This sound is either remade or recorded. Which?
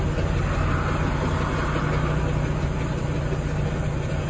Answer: recorded